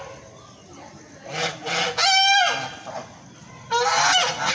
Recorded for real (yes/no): yes